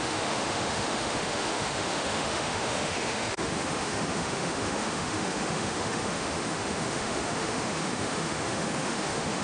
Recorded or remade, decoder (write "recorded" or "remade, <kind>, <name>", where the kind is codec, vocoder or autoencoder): remade, autoencoder, DAC-VAE